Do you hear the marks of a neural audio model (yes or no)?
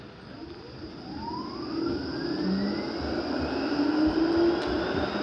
no